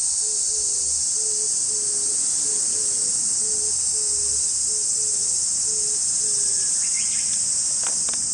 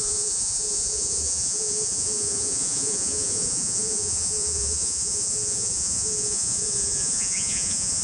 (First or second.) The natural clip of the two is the first